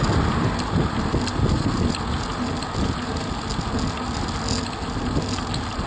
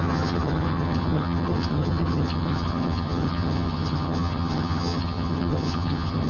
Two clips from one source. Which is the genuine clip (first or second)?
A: first